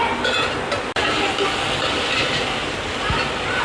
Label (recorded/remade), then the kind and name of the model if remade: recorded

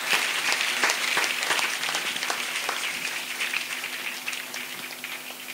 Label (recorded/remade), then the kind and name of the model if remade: remade, vocoder, BigVGAN v2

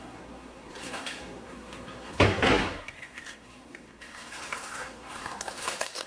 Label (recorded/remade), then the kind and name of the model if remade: remade, codec, SNAC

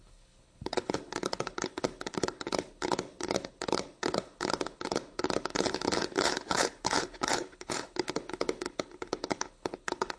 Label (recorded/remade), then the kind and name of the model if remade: remade, codec, HILCodec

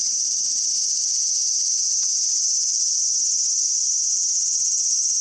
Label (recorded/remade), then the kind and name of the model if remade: recorded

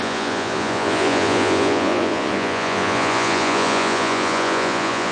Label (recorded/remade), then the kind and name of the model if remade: remade, vocoder, Vocos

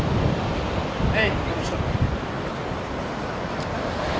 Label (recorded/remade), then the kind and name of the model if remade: recorded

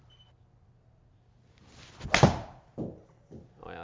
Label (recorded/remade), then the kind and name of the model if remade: recorded